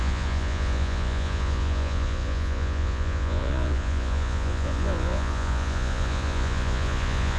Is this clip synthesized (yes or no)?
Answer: yes